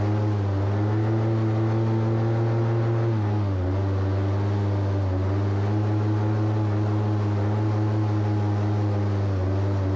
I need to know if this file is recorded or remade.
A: recorded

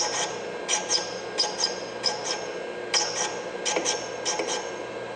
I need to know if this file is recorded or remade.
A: recorded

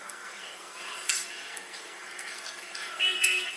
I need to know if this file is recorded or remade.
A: remade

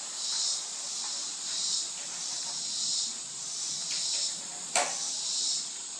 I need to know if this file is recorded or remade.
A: recorded